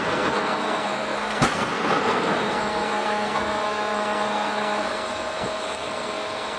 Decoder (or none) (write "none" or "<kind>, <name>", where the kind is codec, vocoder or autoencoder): codec, SNAC